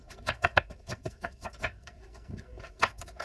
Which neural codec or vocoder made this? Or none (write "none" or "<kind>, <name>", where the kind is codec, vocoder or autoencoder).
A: codec, SNAC